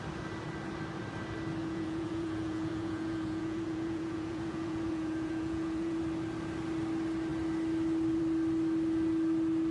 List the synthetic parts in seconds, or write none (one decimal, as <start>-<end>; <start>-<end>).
1.6-6.0